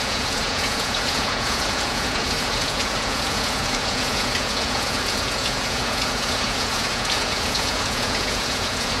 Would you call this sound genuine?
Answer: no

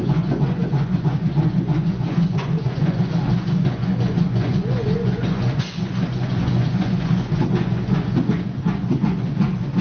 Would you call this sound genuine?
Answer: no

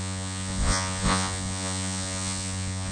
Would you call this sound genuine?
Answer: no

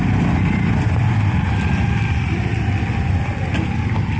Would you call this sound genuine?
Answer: yes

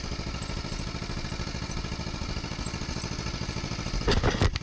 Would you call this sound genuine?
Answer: yes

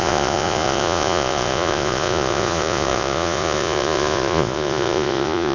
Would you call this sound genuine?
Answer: no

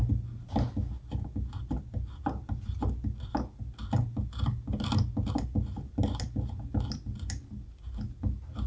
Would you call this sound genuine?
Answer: yes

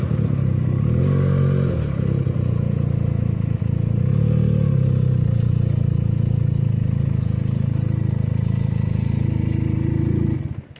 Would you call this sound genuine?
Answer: yes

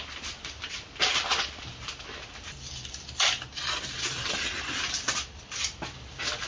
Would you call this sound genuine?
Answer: yes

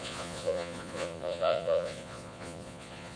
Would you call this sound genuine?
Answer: no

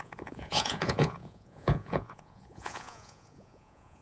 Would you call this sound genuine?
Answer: no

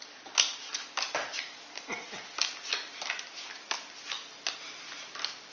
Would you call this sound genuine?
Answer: yes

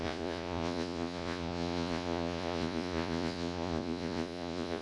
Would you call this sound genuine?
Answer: no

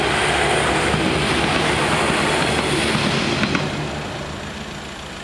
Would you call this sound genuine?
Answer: yes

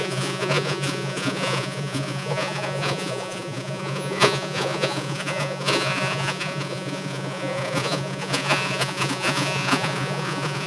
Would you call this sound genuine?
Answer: no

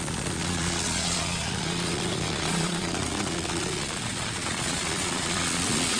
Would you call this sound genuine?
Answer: no